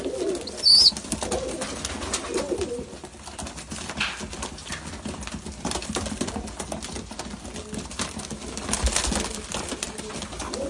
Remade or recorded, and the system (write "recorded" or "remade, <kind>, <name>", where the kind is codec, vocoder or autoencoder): recorded